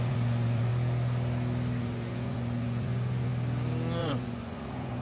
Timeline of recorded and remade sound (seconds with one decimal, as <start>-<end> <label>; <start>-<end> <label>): 0.0-0.7 remade; 0.7-1.8 recorded; 1.8-3.3 remade; 3.3-4.0 recorded; 4.0-5.0 remade